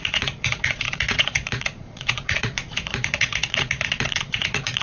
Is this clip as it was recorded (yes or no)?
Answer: no